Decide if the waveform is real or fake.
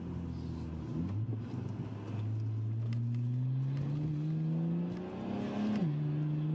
real